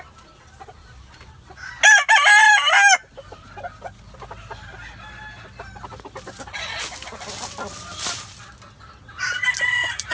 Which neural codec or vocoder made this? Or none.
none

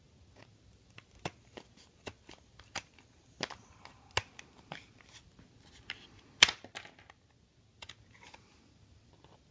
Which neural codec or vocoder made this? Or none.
none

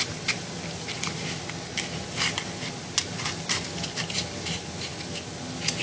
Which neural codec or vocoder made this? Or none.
none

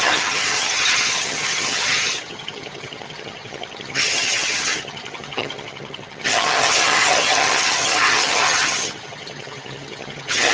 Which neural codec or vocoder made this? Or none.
vocoder, HiFi-GAN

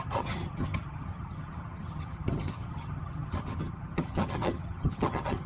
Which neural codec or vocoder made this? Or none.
vocoder, HiFi-GAN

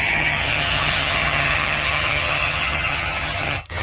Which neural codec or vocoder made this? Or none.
vocoder, HiFi-GAN